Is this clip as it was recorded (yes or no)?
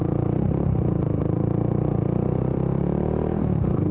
no